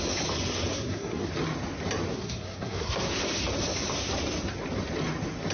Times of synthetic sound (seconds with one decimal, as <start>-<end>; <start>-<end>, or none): 0.7-1.3; 2.1-3.2